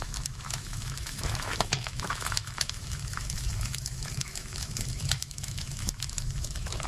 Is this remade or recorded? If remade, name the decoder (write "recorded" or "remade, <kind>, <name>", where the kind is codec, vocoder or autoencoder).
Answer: remade, autoencoder, DAC-VAE